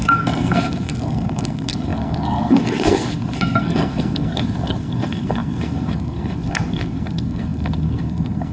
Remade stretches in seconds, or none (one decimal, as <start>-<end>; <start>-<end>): 0.0-8.5